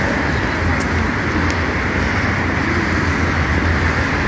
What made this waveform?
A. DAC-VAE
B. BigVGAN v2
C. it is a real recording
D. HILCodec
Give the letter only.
C